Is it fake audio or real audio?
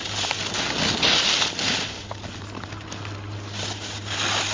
real